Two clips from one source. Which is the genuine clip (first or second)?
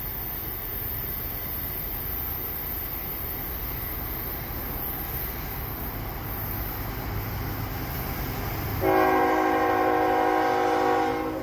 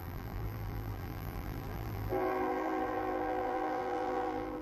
first